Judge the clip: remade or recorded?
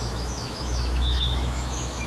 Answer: remade